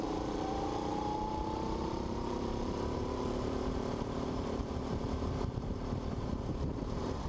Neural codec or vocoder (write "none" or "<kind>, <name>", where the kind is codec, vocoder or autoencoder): vocoder, BigVGAN v2